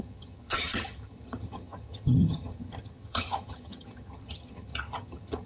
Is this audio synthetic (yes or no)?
yes